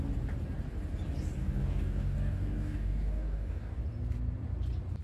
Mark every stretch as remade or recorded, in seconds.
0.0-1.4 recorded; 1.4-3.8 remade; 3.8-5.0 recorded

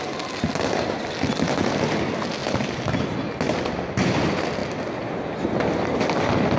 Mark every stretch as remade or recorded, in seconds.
0.0-6.6 recorded

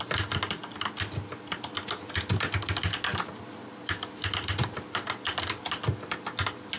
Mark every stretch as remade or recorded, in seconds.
0.0-6.8 recorded

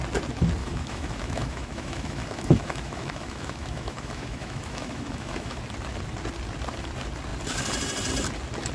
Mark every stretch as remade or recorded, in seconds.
0.0-0.6 recorded; 0.6-5.6 remade; 5.6-8.7 recorded